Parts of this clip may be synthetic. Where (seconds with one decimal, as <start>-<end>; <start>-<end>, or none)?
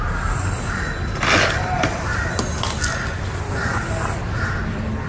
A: none